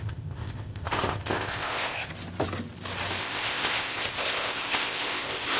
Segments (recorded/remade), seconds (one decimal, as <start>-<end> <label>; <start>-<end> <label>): 0.0-2.1 remade; 2.1-3.2 recorded; 3.2-5.6 remade